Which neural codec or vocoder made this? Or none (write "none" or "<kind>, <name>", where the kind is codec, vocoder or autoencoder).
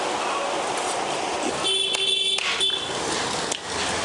none